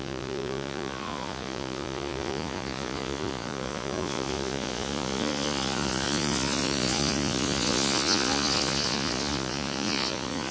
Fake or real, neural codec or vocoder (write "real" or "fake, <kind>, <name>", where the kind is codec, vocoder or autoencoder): fake, vocoder, Vocos